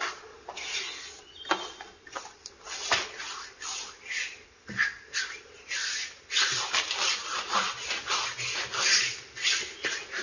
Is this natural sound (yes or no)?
yes